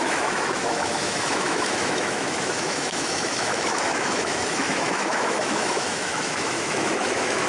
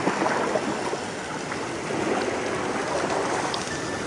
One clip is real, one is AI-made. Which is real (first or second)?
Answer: second